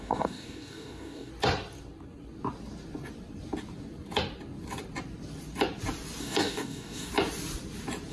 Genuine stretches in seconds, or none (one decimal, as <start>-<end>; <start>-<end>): 1.3-6.2; 7.1-8.1